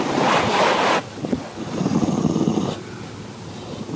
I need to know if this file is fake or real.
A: real